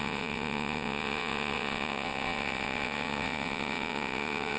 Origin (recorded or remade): remade